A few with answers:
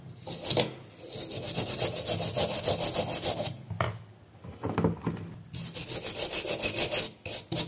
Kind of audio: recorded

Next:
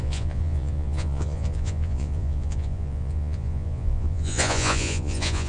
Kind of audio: remade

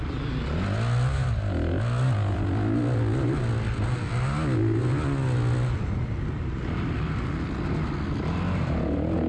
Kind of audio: recorded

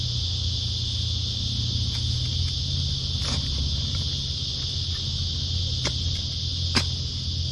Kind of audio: recorded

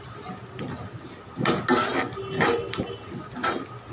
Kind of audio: recorded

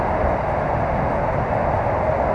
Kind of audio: recorded